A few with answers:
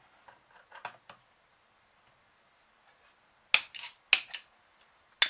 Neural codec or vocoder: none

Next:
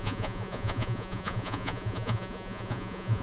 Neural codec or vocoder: vocoder, Vocos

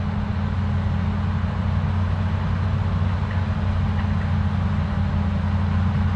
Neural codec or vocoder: none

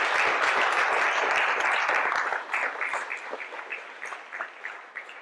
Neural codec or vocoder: none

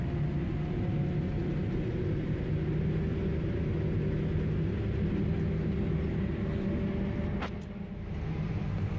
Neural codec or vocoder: none